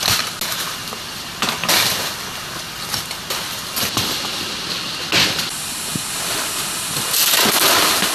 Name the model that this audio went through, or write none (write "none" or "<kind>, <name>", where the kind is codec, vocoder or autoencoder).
none